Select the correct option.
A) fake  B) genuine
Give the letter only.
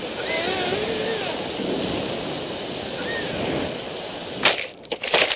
B